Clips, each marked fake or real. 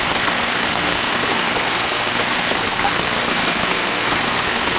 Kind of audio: fake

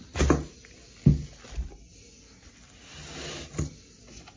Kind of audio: real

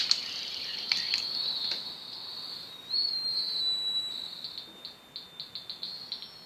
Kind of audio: real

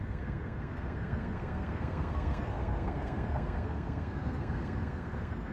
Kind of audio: fake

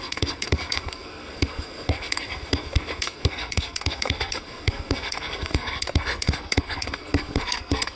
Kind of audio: fake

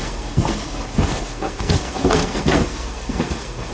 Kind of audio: fake